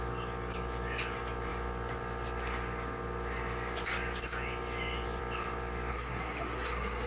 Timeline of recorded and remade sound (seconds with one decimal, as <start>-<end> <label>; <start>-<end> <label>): 0.0-5.9 recorded; 5.9-7.1 remade